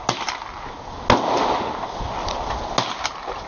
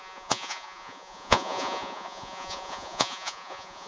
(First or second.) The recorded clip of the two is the first